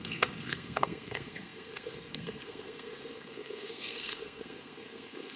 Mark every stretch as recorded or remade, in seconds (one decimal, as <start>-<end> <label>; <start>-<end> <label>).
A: 0.0-5.4 remade